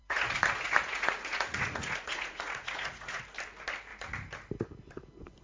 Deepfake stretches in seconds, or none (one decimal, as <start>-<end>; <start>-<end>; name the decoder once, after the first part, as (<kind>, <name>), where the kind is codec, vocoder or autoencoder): 0.0-3.2 (vocoder, Vocos)